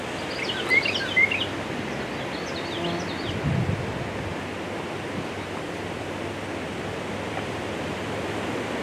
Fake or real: real